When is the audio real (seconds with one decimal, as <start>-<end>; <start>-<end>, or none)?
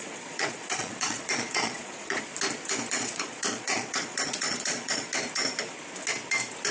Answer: 2.3-2.9; 5.1-6.7